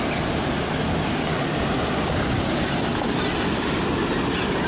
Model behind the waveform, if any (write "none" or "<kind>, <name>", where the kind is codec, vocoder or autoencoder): none